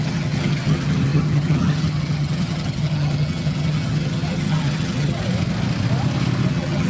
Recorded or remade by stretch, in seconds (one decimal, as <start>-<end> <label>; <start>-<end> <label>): 0.0-5.2 remade; 5.2-6.5 recorded; 6.5-6.9 remade